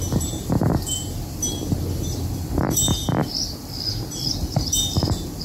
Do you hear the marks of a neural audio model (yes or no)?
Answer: no